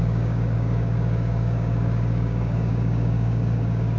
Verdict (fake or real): fake